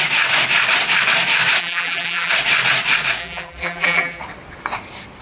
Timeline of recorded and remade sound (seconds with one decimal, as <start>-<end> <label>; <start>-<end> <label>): 0.0-1.6 recorded; 1.6-2.3 remade; 2.3-3.2 recorded; 3.2-4.2 remade; 4.2-5.2 recorded